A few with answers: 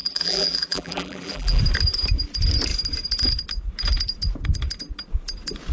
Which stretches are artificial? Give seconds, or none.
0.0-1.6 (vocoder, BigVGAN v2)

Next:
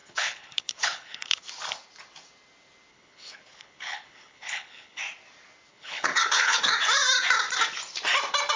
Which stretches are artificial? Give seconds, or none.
0.0-1.4 (codec, HILCodec); 2.9-5.0; 5.7-6.6

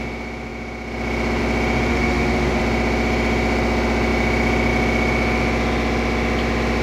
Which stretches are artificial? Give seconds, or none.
1.9-2.6 (autoencoder, DAC-VAE)

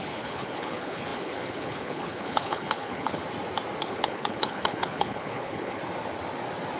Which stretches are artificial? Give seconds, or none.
0.0-3.2 (codec, HILCodec); 3.8-5.8

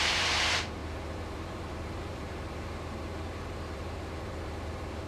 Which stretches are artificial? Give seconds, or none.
0.0-5.1 (vocoder, BigVGAN v2)